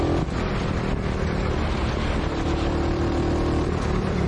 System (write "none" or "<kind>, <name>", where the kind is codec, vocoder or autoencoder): vocoder, BigVGAN v2